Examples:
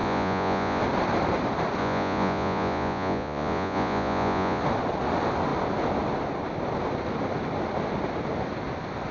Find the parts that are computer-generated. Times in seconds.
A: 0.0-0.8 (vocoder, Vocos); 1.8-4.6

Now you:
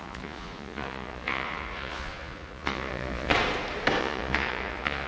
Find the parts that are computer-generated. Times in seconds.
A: 0.0-3.3 (vocoder, Vocos); 4.0-5.1